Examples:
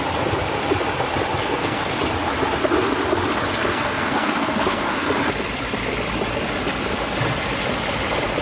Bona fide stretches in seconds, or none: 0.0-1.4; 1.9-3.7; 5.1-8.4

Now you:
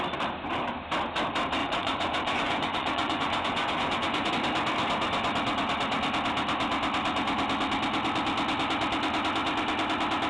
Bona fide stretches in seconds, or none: 0.0-1.6; 4.3-10.3